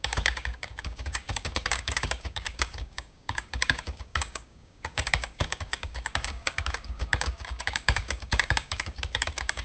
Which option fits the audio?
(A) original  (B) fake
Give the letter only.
B